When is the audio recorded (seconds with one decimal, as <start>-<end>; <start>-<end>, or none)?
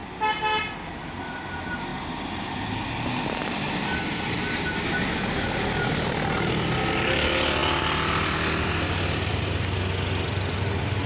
0.0-11.1